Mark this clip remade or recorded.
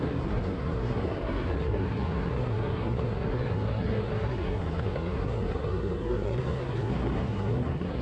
remade